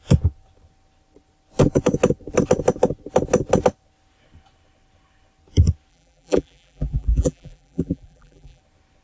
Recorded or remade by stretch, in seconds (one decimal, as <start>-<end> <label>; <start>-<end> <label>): 0.0-5.9 recorded; 5.9-8.6 remade; 8.6-9.0 recorded